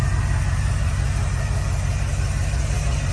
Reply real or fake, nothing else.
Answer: real